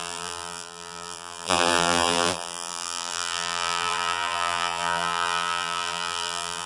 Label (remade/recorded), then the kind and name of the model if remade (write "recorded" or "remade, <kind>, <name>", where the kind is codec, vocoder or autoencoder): remade, vocoder, BigVGAN v2